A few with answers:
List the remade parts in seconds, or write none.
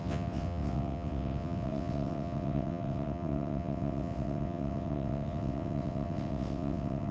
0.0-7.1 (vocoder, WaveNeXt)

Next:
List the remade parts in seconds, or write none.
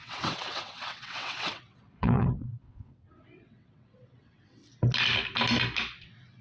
0.0-4.6 (vocoder, WaveNeXt); 6.0-6.4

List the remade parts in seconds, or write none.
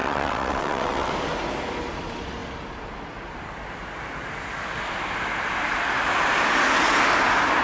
0.0-1.1 (vocoder, WaveNeXt)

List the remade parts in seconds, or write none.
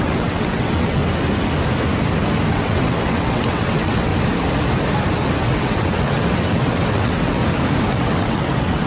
0.0-1.0 (vocoder, WaveNeXt); 2.5-4.1; 5.4-7.4; 7.9-8.9